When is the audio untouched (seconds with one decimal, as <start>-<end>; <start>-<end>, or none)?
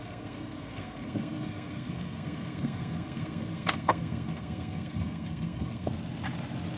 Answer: 5.9-6.8